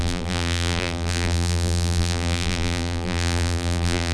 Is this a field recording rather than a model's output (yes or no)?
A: no